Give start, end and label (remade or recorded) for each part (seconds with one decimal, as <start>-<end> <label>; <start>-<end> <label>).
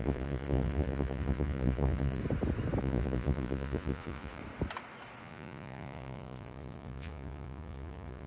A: 0.0-2.2 remade; 2.2-2.8 recorded; 2.8-4.4 remade; 4.4-5.2 recorded; 5.2-8.3 remade